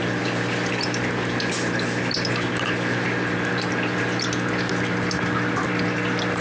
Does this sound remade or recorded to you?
recorded